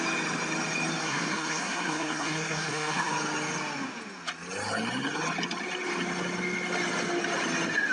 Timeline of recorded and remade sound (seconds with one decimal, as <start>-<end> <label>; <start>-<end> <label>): 0.0-1.0 recorded; 1.0-3.1 remade; 3.1-7.9 recorded